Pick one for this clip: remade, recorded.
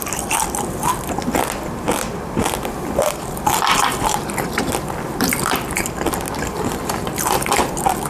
remade